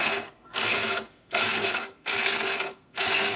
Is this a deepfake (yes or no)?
yes